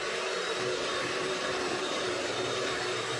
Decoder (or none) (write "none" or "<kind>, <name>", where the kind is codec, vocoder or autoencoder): vocoder, BigVGAN v2